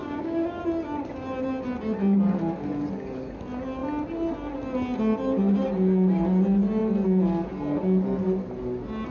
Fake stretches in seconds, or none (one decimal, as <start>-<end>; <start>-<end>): 0.0-0.6